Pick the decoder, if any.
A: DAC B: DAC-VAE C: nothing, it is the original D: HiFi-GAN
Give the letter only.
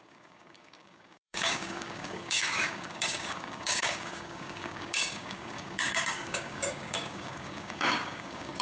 A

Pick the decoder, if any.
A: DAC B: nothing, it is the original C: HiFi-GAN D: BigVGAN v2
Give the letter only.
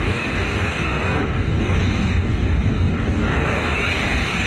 A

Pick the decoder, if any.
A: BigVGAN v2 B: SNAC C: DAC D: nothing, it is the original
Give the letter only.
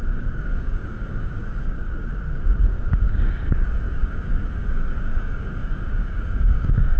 C